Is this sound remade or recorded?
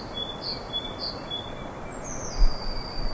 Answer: recorded